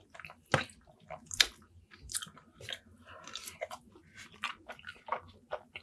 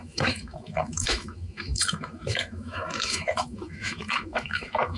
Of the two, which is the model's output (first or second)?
second